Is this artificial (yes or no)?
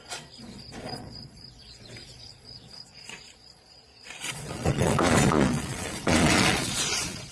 yes